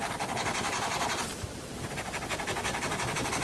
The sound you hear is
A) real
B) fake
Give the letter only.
A